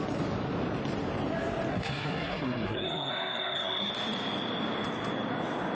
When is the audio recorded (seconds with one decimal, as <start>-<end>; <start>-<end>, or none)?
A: 0.0-1.7; 3.9-5.7